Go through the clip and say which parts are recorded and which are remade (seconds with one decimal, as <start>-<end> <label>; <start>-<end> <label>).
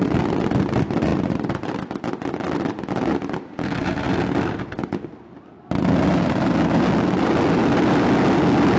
0.0-8.8 recorded